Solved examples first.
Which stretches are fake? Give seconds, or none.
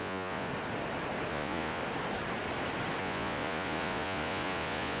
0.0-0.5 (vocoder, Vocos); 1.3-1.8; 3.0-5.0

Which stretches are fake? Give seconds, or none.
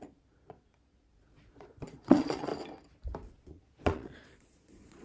0.0-2.5 (vocoder, Vocos); 3.3-5.0